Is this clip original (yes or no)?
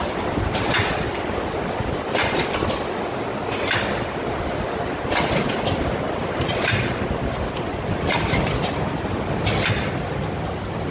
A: yes